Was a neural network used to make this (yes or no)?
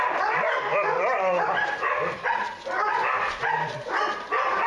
yes